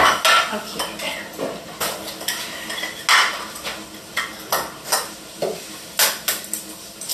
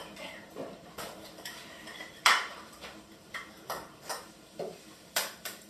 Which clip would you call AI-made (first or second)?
second